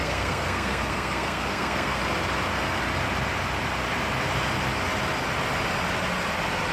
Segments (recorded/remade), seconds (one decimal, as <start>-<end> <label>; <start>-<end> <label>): 0.0-2.0 remade; 2.0-6.7 recorded